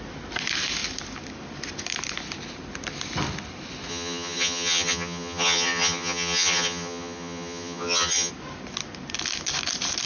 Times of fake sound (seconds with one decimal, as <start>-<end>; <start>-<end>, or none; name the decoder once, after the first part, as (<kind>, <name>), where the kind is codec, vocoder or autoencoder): 3.9-8.3 (vocoder, HiFi-GAN)

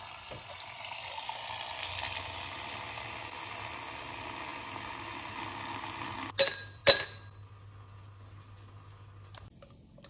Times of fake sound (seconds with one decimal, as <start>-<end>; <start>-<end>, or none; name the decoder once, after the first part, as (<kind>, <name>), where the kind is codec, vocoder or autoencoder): none

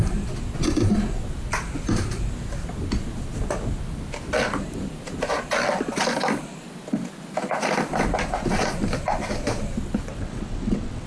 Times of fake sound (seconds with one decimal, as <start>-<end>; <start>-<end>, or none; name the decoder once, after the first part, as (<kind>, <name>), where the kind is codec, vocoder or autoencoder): 10.1-11.1 (vocoder, WaveNeXt)

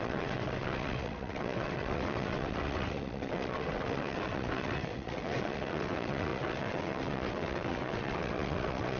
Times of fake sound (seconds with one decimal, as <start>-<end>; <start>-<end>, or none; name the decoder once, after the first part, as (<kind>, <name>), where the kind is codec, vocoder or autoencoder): 0.0-9.0 (vocoder, WaveNeXt)